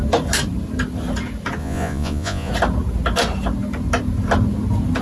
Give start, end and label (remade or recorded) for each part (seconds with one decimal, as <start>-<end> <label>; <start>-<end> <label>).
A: 0.0-1.6 recorded; 1.6-2.5 remade; 2.5-5.0 recorded